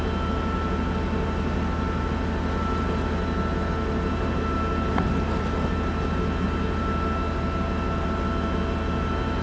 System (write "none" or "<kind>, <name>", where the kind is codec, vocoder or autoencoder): none